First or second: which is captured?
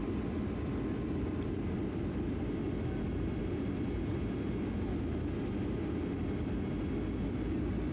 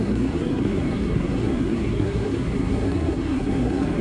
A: first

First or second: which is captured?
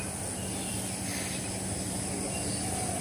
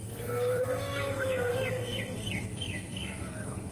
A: first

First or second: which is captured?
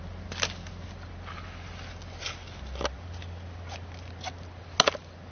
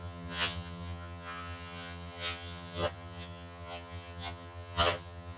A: first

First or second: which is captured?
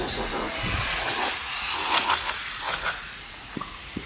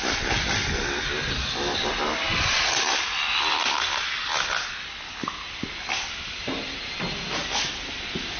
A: second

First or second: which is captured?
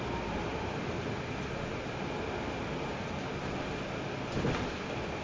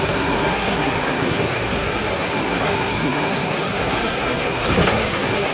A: first